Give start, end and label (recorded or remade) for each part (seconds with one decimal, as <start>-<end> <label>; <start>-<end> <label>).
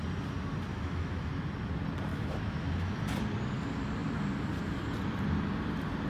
0.0-0.7 recorded; 0.7-1.3 remade; 1.3-2.1 recorded; 2.1-3.0 remade; 3.0-6.1 recorded